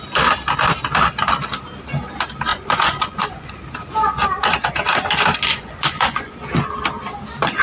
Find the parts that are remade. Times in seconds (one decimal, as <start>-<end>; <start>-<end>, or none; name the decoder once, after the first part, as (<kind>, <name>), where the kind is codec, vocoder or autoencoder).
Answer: 2.5-3.5 (vocoder, Vocos); 5.5-6.3